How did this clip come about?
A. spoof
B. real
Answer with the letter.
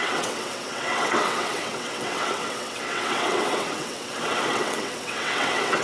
A